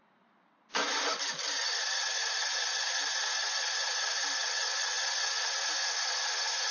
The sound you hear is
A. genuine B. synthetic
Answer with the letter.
A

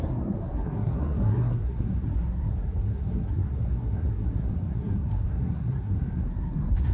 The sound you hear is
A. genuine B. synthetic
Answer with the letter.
B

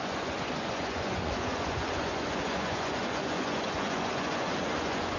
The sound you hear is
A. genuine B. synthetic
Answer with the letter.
B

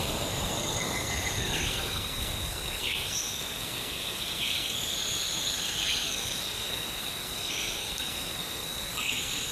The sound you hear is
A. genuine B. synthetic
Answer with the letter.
B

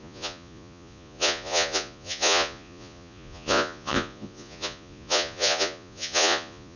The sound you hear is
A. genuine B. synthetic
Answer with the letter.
B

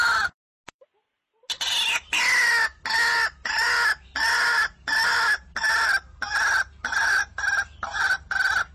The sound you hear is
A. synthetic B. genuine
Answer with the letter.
B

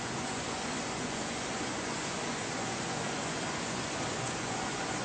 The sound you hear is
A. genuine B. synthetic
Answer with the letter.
B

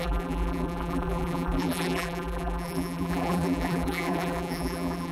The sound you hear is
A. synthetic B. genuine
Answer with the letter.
A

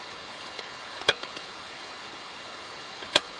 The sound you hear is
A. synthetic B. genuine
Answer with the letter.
A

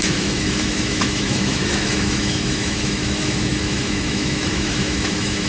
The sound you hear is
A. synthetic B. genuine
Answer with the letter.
A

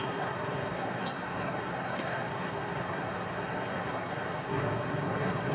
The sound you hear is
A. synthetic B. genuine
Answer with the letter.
A